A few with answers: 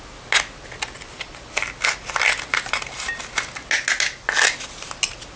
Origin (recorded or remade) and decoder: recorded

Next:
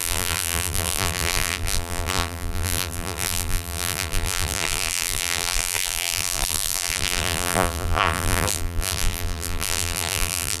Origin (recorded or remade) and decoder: remade, vocoder, BigVGAN v2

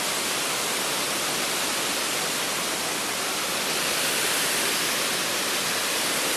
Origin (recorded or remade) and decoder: recorded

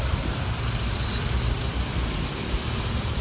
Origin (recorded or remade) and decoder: recorded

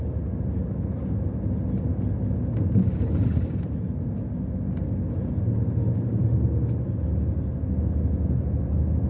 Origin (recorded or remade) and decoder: recorded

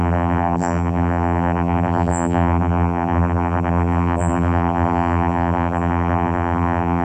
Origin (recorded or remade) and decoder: remade, vocoder, BigVGAN v2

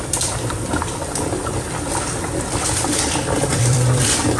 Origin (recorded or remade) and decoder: remade, vocoder, BigVGAN v2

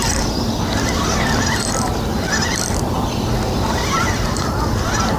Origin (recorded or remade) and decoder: recorded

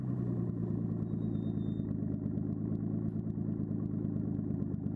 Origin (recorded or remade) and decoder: recorded